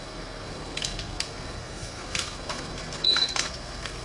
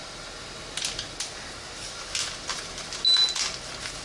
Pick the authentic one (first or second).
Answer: second